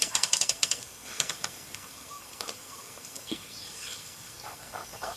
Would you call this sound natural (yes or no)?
no